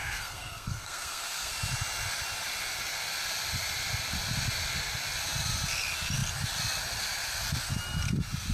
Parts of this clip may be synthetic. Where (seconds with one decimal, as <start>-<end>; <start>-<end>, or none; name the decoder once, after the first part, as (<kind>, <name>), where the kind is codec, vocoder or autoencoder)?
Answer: 0.0-1.5 (codec, SNAC)